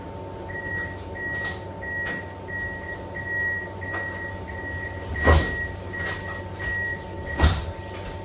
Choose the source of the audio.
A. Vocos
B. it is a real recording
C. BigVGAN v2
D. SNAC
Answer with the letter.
B